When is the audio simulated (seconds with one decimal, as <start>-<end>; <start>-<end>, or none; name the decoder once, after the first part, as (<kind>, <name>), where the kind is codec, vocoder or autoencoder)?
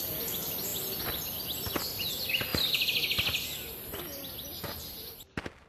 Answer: none